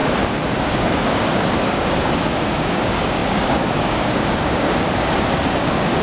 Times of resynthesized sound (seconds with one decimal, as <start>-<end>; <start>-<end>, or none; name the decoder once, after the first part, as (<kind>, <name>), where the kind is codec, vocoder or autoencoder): 0.6-6.0 (codec, DAC)